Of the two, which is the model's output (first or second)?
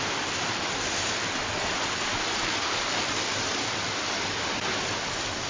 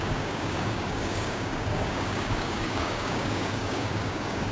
second